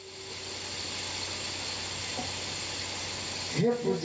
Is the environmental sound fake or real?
real